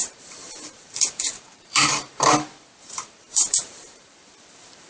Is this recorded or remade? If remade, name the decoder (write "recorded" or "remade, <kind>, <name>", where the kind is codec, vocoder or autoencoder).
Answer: remade, vocoder, BigVGAN v2